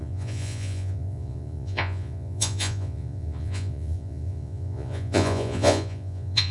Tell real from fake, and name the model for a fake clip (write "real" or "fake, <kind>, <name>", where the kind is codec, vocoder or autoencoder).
fake, vocoder, Vocos